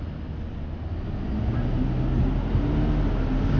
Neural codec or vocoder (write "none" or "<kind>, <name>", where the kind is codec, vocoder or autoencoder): none